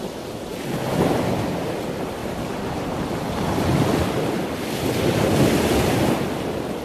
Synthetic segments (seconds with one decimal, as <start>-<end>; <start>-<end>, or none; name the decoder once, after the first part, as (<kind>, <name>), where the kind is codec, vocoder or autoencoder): 2.2-2.9 (vocoder, BigVGAN v2)